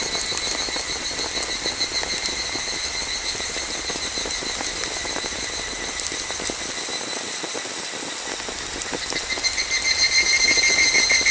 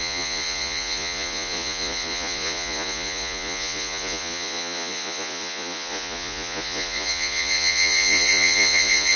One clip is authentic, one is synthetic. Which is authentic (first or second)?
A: first